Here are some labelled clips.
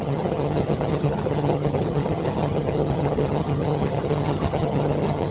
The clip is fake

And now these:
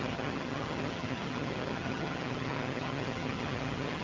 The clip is fake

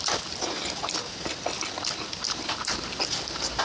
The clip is real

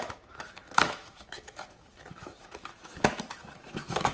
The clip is fake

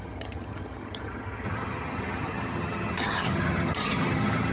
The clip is fake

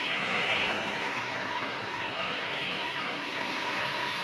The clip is fake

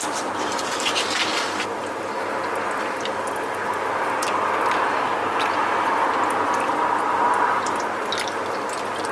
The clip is real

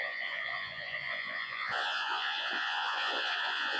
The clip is fake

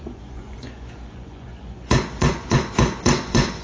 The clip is fake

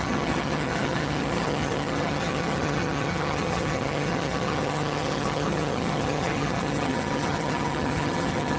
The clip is fake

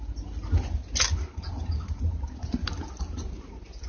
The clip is real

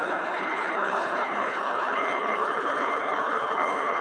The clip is fake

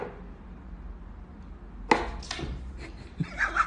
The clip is real